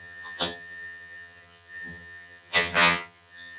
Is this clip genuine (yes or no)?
no